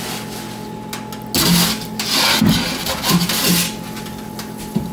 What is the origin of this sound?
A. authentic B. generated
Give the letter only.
A